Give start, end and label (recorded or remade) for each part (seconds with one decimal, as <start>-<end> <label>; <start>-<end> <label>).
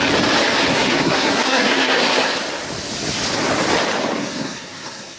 0.0-0.7 recorded; 0.7-2.3 remade; 2.3-4.2 recorded; 4.2-5.2 remade